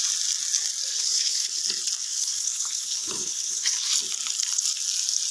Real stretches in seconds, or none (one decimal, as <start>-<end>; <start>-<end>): 0.0-0.9; 1.6-2.0; 3.9-5.3